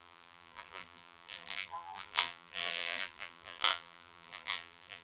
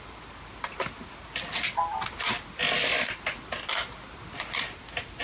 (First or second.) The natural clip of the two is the second